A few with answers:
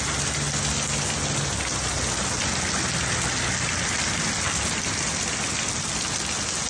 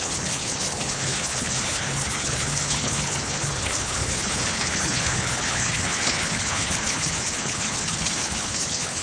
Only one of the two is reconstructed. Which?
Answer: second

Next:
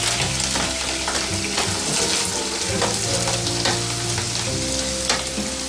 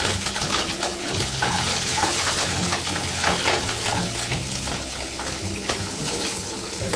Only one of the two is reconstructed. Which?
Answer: second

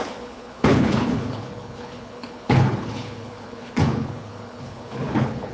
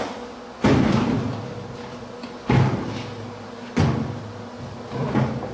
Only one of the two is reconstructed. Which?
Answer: first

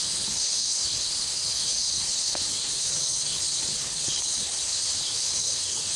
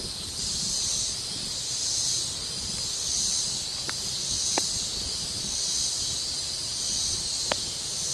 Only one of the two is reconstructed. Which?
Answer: first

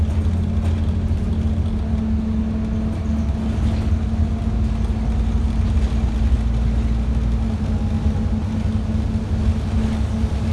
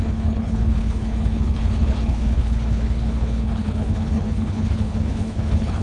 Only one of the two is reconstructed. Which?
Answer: second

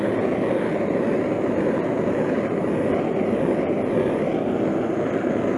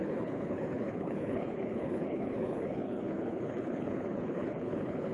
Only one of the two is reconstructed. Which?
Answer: second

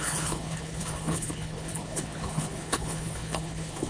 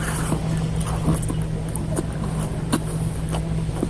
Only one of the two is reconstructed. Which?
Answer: first